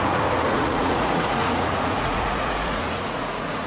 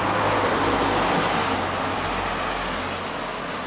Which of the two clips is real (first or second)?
second